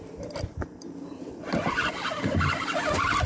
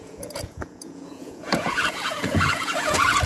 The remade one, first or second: second